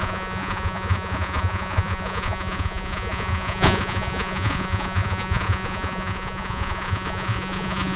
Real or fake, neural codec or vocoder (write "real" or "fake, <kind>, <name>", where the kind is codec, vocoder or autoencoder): fake, vocoder, Vocos